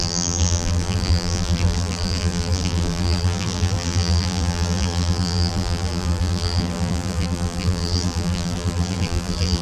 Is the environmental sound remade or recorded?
remade